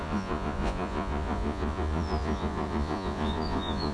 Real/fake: fake